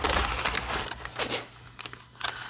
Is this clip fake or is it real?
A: real